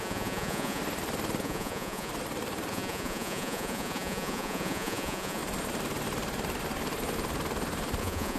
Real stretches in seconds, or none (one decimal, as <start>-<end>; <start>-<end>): 0.8-1.4; 2.1-2.7; 5.4-8.0